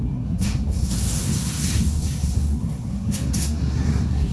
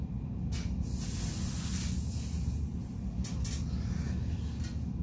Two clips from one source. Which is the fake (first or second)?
first